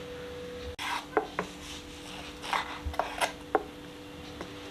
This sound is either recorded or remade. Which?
recorded